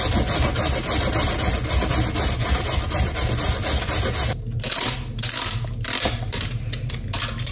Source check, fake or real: real